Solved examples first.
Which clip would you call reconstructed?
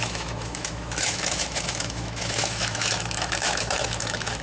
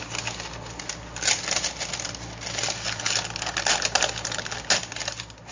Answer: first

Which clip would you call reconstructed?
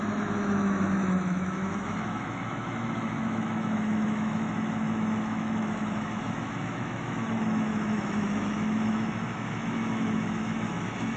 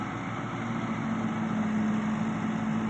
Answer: first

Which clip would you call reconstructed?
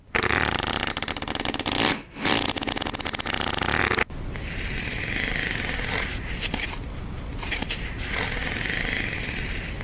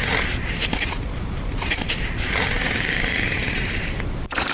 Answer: second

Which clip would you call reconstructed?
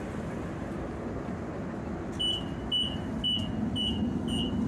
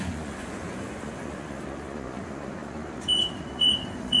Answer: second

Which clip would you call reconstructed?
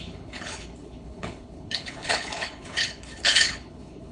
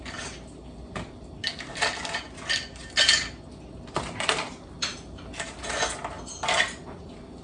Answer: first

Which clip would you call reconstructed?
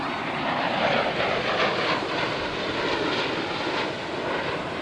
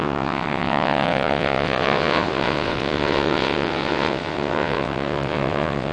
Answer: second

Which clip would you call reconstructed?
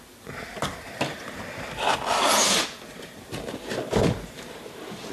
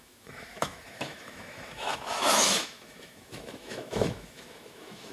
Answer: second